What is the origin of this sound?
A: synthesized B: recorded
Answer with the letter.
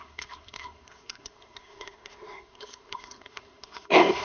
A